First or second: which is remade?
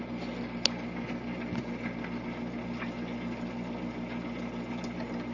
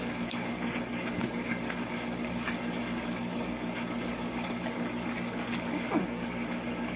second